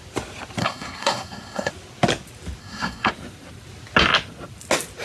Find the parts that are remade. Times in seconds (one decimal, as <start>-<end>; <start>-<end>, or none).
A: 0.6-1.7; 2.6-3.1